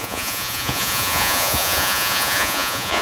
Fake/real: fake